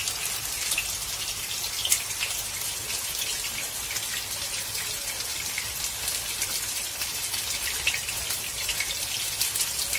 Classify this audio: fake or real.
real